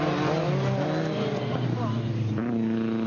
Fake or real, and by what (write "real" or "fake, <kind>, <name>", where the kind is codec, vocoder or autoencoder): real